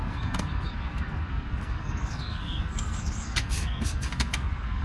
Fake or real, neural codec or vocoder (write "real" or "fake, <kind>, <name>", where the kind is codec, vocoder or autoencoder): fake, codec, SNAC